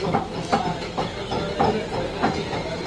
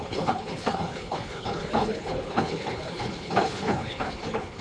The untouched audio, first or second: first